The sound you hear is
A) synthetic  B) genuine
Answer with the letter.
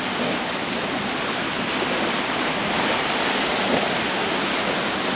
B